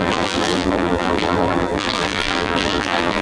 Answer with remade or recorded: remade